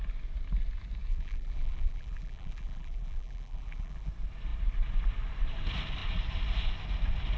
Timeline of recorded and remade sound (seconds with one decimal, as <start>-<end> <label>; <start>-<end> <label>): 0.0-1.1 recorded; 1.1-4.1 remade; 4.1-7.4 recorded